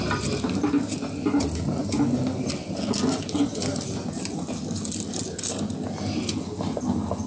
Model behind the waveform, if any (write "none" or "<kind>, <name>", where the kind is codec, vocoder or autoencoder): none